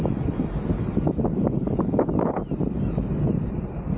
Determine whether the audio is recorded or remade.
recorded